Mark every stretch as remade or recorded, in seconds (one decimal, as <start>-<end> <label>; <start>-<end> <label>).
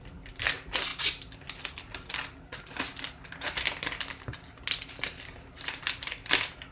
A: 0.0-6.7 recorded